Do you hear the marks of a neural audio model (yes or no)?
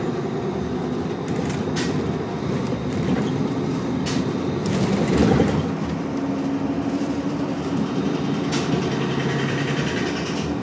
no